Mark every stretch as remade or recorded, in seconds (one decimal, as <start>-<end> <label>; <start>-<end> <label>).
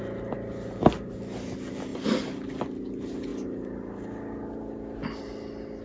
0.0-5.8 recorded